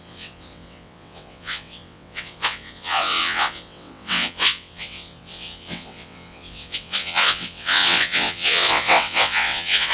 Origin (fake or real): fake